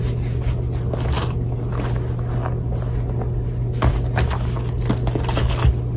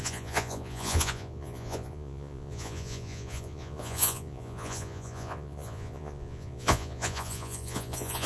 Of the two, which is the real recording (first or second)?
first